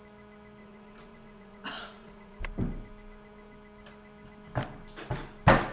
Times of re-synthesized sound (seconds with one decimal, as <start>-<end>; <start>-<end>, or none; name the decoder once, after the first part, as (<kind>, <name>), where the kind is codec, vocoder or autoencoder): 0.6-2.4 (vocoder, Vocos)